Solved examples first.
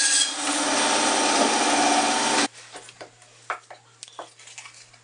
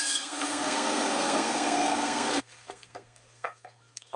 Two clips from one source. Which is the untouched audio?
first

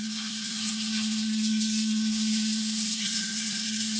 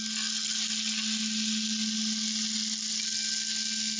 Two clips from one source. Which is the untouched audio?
second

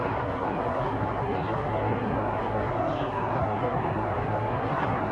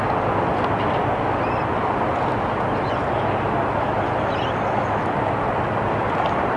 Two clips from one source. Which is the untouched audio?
second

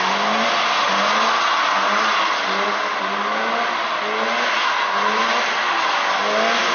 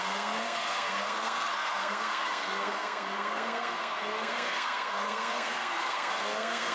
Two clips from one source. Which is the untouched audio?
first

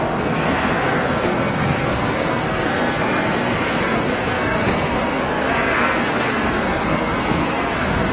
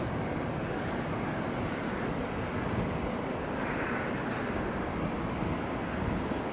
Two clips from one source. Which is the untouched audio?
second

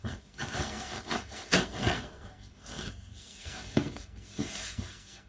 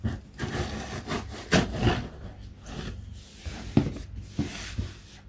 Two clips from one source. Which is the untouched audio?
second